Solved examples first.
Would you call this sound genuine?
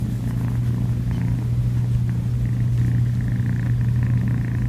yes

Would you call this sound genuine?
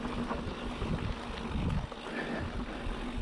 yes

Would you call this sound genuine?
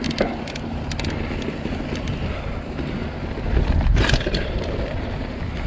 yes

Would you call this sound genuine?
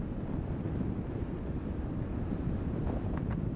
yes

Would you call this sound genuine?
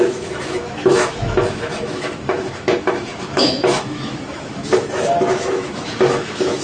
no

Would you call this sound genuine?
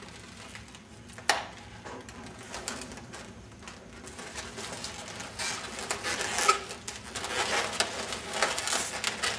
yes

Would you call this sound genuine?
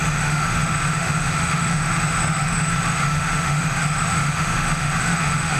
no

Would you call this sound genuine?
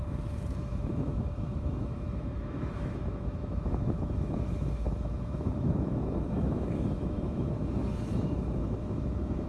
no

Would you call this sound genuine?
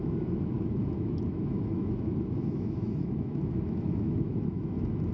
no